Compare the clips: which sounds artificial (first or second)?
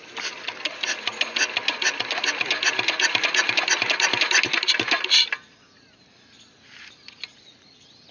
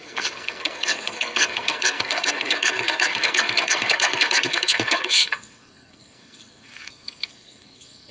second